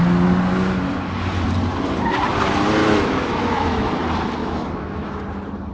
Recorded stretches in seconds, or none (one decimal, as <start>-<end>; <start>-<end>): 0.0-2.8; 3.9-4.4; 5.1-5.7